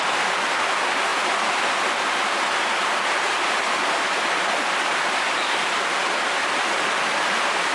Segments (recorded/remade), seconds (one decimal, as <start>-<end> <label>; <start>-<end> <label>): 0.0-7.7 recorded